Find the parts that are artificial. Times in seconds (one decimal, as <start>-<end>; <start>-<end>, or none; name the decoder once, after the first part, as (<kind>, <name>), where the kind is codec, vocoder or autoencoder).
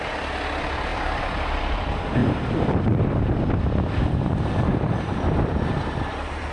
0.0-6.5 (vocoder, BigVGAN v2)